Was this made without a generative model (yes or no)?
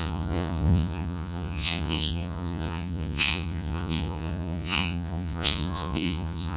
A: no